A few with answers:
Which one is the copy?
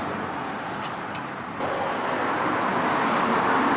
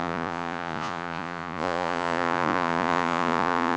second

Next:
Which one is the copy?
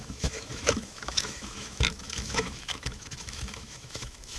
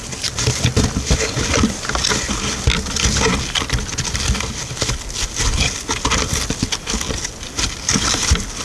first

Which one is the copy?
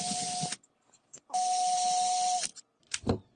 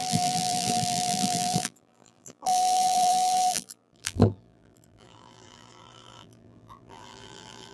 second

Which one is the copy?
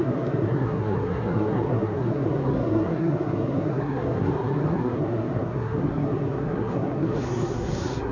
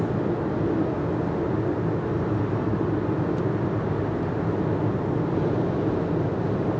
first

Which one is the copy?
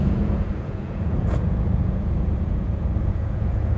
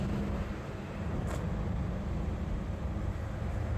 first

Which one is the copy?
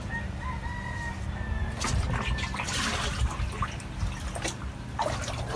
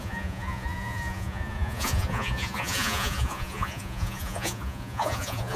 second